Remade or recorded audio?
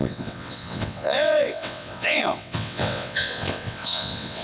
remade